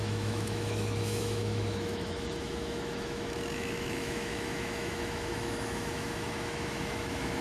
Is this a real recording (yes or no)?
no